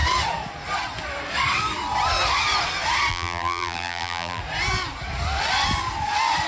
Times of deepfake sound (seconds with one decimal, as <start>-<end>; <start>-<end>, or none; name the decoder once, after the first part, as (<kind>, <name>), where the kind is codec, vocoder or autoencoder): 3.1-4.4 (vocoder, BigVGAN v2)